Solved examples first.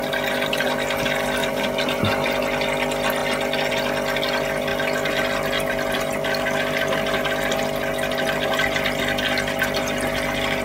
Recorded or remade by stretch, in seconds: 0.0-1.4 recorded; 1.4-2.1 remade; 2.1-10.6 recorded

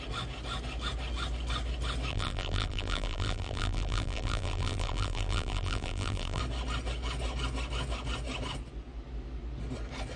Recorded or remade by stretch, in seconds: 0.0-2.1 recorded; 2.1-6.4 remade; 6.4-10.2 recorded

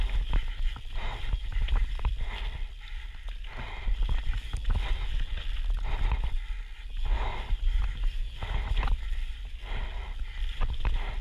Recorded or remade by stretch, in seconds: 0.0-0.7 recorded; 0.7-1.9 remade; 1.9-7.3 recorded; 7.3-9.5 remade; 9.5-11.2 recorded

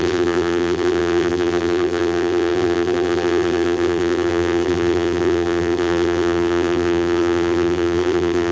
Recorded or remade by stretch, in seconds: 0.0-8.5 remade

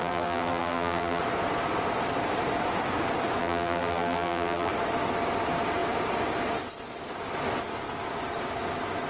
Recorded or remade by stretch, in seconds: 0.0-1.2 remade; 1.2-3.4 recorded; 3.4-4.7 remade; 4.7-9.1 recorded

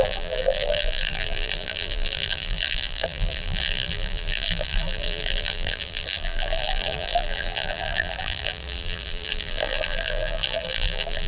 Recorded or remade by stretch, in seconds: 0.0-11.3 remade

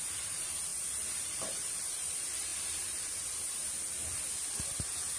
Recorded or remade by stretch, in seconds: 0.0-2.5 remade; 2.5-4.8 recorded; 4.8-5.2 remade

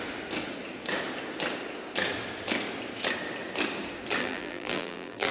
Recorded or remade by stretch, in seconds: 0.0-4.2 recorded; 4.2-5.3 remade